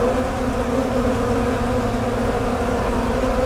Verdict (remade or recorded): recorded